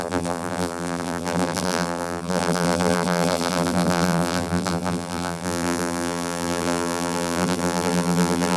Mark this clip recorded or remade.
remade